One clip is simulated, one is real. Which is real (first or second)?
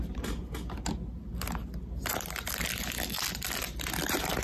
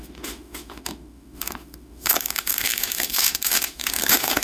first